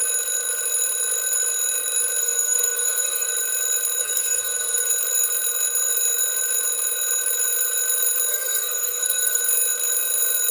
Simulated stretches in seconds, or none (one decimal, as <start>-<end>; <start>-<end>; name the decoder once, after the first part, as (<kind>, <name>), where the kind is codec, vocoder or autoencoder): 2.2-3.3 (codec, SNAC); 4.0-4.9; 8.3-9.4